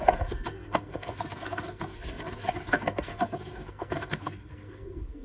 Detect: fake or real fake